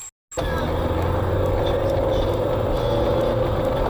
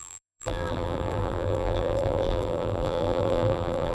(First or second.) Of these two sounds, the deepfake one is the second